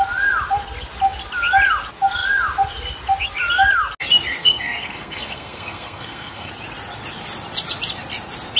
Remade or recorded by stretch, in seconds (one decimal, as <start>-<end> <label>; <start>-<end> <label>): 0.0-4.4 recorded; 4.4-6.5 remade; 6.5-8.6 recorded